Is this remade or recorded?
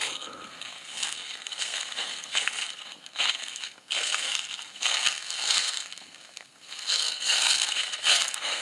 remade